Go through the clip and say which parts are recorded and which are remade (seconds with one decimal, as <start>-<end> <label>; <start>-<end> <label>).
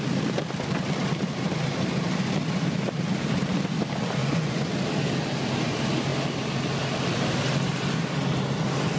0.0-4.2 recorded; 4.2-4.7 remade; 4.7-9.0 recorded